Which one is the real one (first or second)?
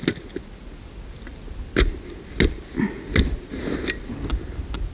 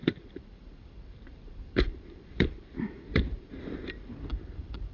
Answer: first